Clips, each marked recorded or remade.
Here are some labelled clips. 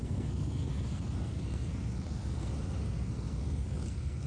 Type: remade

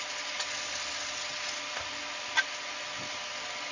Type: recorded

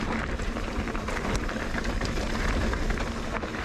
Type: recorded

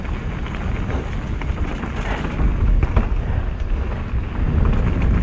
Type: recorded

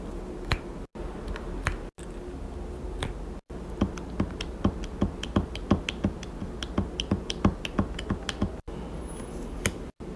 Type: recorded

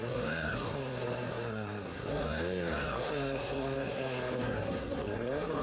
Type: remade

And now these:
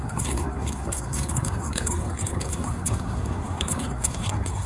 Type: remade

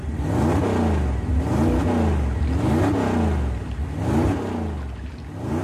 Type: recorded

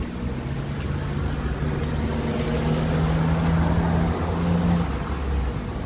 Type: recorded